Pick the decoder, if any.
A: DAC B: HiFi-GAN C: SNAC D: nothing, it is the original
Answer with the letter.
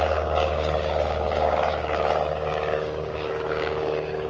A